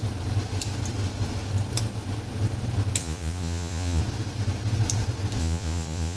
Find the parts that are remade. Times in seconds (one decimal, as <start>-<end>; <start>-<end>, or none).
3.0-4.0; 5.4-6.2